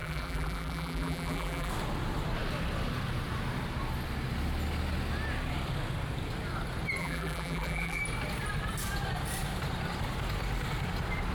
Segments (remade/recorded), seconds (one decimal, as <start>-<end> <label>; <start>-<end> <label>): 0.0-1.7 remade; 1.7-7.0 recorded; 7.0-8.0 remade; 8.0-11.3 recorded